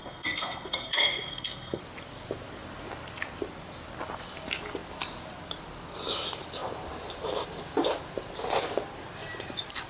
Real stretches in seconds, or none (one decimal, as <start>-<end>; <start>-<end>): 1.8-9.9